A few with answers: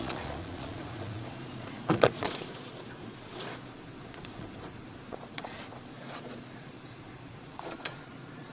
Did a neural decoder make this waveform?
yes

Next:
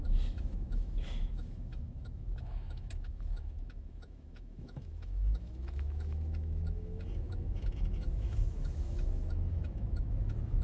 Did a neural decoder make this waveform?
yes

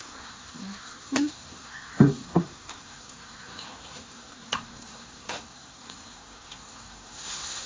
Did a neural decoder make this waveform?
yes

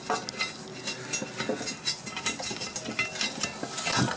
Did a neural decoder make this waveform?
no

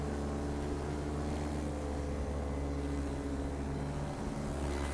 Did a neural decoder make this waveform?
no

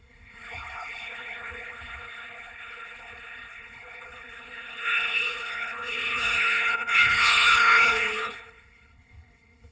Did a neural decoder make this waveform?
yes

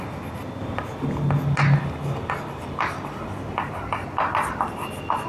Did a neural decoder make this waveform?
no